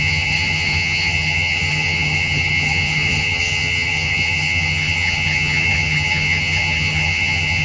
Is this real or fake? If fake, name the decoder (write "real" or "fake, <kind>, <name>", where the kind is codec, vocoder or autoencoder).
fake, vocoder, HiFi-GAN